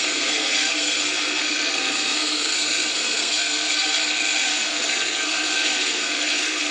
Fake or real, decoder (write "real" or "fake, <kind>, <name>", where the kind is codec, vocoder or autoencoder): fake, codec, SNAC